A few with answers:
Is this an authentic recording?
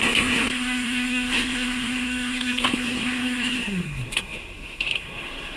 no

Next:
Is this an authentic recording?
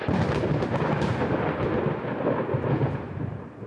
yes